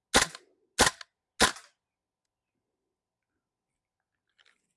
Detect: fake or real real